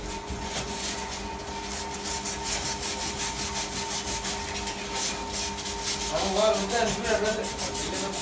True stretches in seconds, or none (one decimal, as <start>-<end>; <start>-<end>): 1.4-8.2